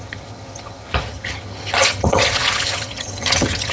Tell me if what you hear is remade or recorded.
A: remade